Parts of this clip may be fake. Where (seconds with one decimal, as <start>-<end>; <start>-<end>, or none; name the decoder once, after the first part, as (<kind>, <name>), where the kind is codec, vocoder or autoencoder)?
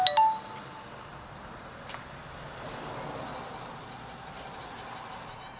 none